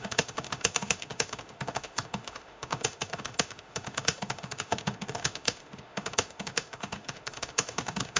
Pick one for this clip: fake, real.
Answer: fake